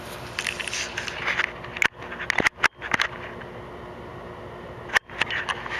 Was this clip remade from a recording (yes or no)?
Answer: no